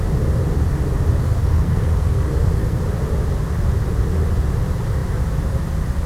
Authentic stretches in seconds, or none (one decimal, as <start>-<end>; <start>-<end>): 0.0-1.2; 2.8-6.1